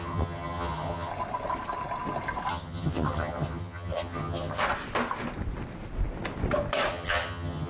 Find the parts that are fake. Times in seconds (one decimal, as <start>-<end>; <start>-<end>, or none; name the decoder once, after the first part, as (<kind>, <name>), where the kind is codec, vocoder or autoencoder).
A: 0.0-1.1 (vocoder, HiFi-GAN); 2.5-4.6; 6.9-7.7